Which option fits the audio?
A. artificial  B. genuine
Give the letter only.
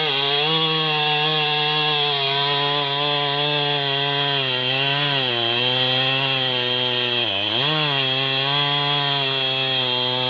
B